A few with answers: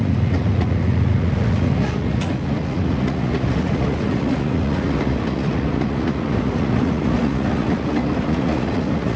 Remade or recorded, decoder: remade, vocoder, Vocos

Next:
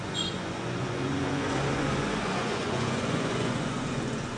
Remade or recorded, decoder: remade, vocoder, Vocos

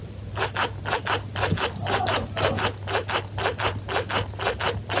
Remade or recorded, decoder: recorded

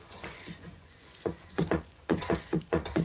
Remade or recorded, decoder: remade, vocoder, Vocos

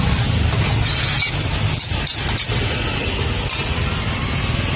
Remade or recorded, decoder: recorded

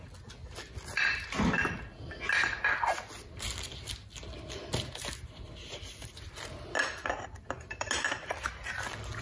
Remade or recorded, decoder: recorded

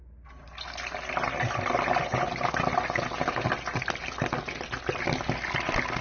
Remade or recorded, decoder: recorded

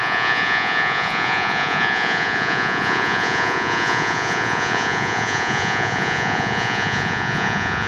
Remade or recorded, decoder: remade, vocoder, Vocos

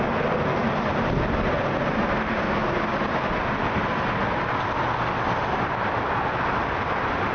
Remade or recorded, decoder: recorded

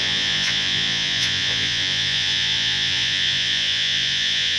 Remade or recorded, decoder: remade, vocoder, Vocos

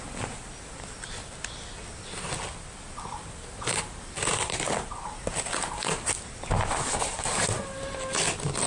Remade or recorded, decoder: recorded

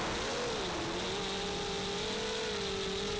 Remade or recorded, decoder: recorded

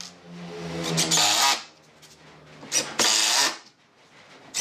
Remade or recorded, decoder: recorded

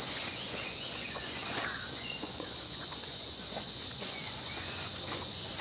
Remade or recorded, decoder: remade, vocoder, Vocos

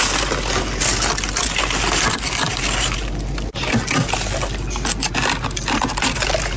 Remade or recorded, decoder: recorded